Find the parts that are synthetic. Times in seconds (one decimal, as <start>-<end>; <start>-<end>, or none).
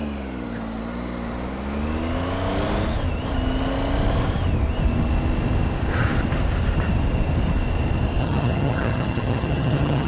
8.2-10.1